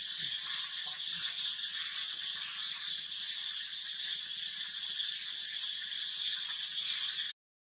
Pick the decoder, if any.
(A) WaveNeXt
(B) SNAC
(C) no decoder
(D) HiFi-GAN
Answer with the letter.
C